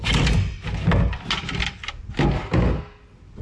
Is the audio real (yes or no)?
yes